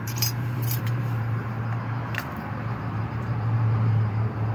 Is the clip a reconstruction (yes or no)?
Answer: yes